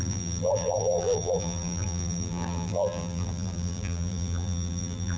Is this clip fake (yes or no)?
yes